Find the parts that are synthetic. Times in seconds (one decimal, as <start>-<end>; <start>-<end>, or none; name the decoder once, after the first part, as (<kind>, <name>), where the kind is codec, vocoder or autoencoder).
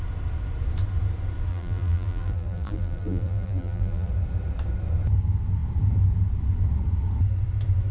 1.5-4.1 (vocoder, BigVGAN v2)